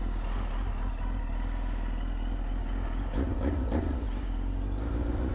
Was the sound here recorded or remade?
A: recorded